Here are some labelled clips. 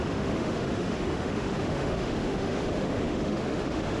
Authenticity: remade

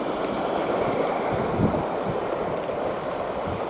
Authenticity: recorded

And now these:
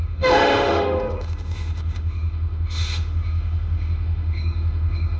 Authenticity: remade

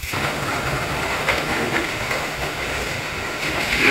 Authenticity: remade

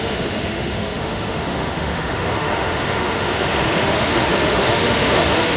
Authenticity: remade